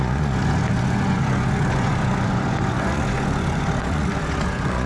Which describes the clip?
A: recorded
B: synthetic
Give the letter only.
B